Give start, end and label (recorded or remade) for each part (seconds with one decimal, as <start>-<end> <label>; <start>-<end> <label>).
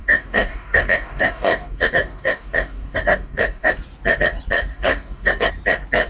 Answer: 0.0-3.7 remade; 3.7-4.7 recorded; 4.7-5.5 remade; 5.5-6.1 recorded